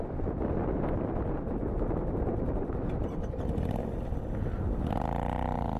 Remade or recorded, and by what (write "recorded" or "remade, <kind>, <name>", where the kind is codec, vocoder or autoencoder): recorded